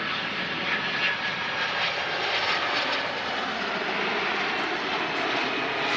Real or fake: real